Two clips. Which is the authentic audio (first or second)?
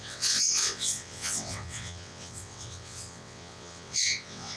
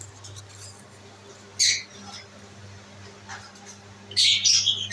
second